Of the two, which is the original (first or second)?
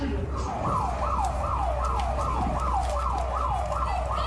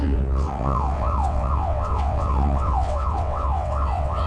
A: first